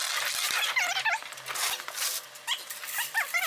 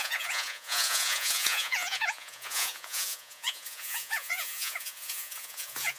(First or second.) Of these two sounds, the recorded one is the first